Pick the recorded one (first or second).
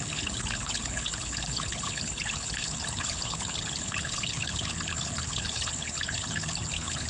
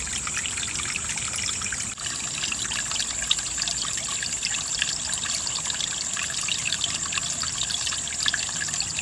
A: second